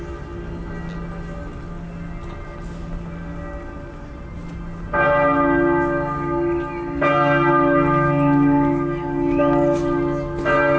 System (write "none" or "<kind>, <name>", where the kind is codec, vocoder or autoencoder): none